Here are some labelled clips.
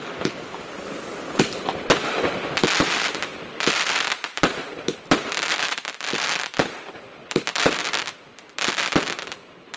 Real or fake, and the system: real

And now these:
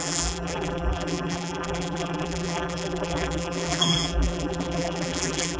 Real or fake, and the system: fake, vocoder, BigVGAN v2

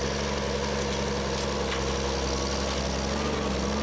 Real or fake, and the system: real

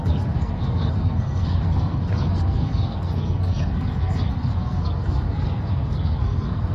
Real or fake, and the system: fake, codec, SNAC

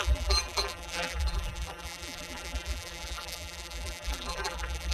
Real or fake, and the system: fake, vocoder, BigVGAN v2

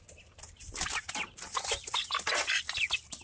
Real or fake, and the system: real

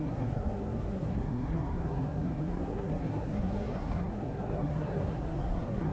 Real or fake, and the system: fake, codec, SNAC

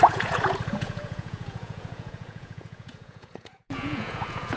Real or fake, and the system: fake, vocoder, Vocos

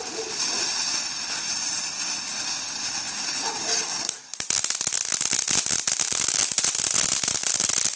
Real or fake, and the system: real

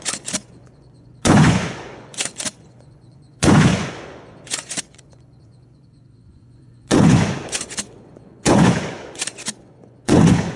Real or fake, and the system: fake, vocoder, Vocos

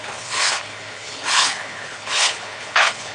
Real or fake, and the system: fake, codec, HILCodec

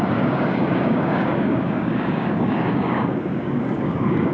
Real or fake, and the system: fake, codec, DAC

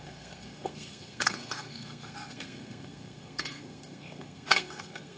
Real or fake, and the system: fake, codec, SNAC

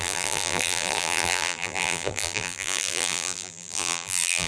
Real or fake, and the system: fake, vocoder, BigVGAN v2